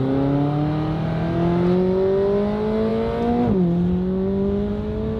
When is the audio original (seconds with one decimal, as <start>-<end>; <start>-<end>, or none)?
0.0-5.2